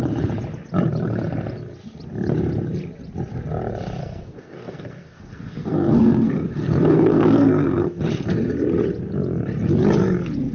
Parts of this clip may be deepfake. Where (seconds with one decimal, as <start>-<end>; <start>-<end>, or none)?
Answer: 4.0-8.0